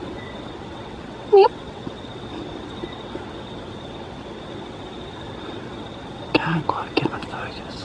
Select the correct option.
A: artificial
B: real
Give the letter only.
A